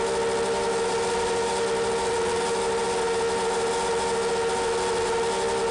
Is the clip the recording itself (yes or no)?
yes